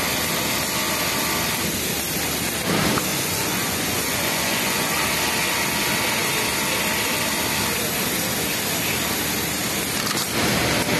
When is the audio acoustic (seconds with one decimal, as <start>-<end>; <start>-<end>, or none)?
0.0-3.1; 5.0-11.0

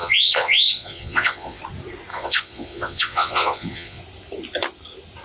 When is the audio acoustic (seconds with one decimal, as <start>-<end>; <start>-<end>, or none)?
1.6-2.1; 4.0-5.2

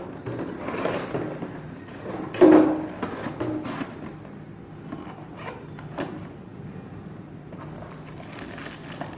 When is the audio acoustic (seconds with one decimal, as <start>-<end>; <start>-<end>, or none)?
0.0-9.2

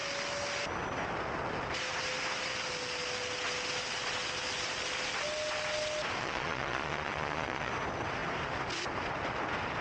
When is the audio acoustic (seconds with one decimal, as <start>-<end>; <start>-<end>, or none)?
0.0-6.2; 7.7-9.8